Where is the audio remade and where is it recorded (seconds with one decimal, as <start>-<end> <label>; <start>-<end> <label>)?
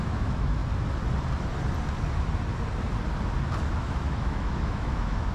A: 0.0-0.6 remade; 0.6-3.8 recorded; 3.8-5.3 remade